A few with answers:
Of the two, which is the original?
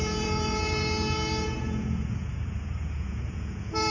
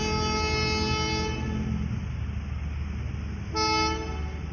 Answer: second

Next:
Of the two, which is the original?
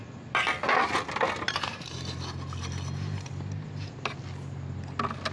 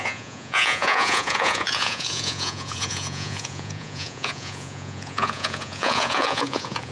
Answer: first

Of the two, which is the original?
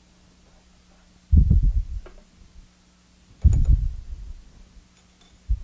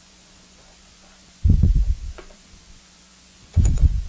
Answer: first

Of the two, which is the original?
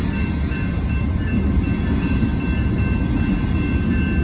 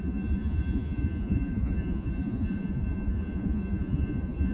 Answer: first